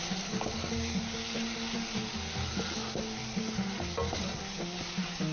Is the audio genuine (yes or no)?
yes